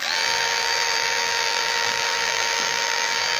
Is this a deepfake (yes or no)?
yes